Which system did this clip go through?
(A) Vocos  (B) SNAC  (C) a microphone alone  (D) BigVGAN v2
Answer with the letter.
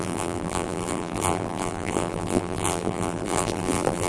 D